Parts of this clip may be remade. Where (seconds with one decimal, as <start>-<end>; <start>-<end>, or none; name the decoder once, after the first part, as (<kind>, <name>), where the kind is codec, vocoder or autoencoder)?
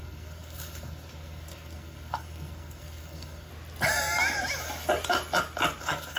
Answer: 0.0-3.5 (codec, SNAC); 5.8-6.2